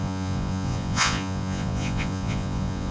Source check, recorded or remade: remade